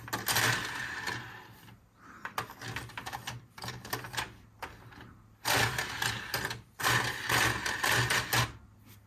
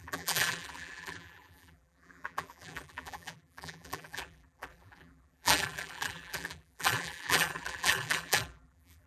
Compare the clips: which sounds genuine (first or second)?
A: first